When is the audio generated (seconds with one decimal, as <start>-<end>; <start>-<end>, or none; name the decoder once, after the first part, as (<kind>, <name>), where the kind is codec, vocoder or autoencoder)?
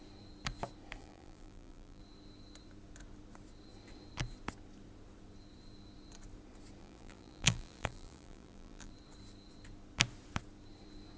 1.0-2.0 (vocoder, BigVGAN v2); 6.8-8.9